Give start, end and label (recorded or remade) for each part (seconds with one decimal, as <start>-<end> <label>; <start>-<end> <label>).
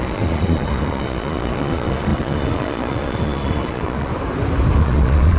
0.0-4.1 remade; 4.1-4.8 recorded; 4.8-5.4 remade